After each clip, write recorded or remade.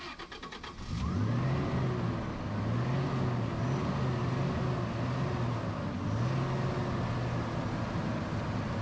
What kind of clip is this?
recorded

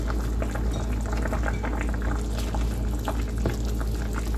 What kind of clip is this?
recorded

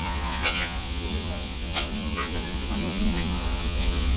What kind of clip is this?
remade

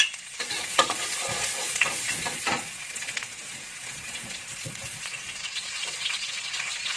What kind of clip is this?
remade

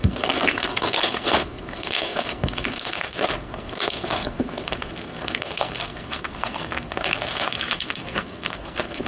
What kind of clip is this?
remade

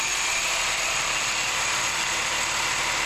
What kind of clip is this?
remade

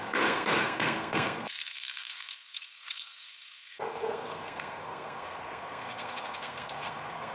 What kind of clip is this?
remade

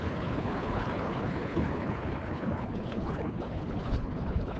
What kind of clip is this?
remade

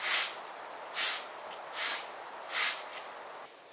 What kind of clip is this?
recorded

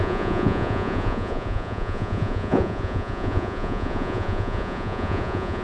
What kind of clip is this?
remade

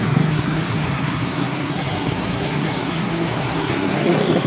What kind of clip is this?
remade